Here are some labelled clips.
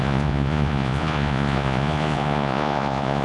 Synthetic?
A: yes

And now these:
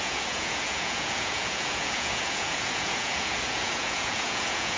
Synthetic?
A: yes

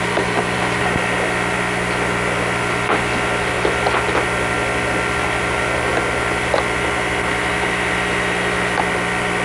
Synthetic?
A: no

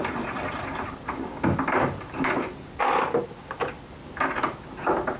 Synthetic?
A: no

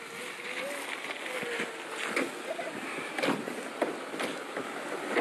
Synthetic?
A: no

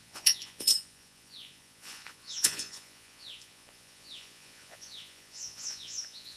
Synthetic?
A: yes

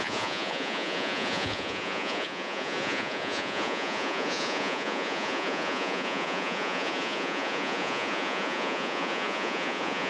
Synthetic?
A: yes